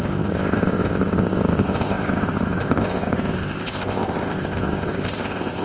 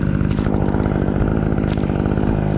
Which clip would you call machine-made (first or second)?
first